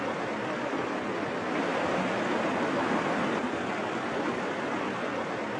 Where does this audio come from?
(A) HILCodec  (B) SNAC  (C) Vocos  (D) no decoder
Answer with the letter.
D